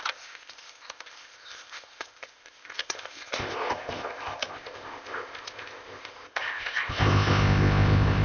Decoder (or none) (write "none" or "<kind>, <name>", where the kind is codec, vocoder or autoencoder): codec, ZipCodec